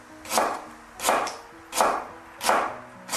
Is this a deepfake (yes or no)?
no